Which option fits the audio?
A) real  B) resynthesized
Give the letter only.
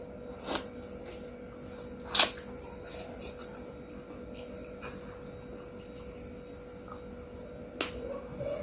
A